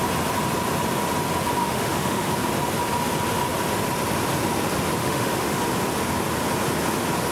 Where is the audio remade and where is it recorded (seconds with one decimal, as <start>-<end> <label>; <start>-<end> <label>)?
0.0-1.6 recorded; 1.6-2.3 remade; 2.3-5.0 recorded; 5.0-5.6 remade; 5.6-7.3 recorded